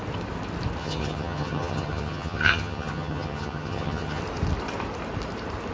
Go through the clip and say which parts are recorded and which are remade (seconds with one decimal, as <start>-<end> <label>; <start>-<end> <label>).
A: 0.0-0.8 recorded; 0.8-4.2 remade; 4.2-5.7 recorded